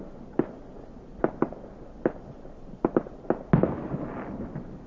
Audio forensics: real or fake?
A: real